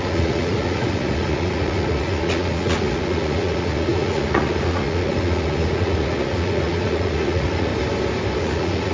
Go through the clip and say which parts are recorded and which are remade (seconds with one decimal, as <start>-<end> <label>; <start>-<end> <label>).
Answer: 0.0-7.7 remade; 7.7-8.4 recorded; 8.4-8.9 remade